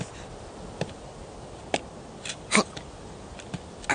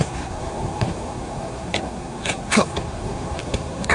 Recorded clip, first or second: first